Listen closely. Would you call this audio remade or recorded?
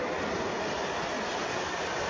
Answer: recorded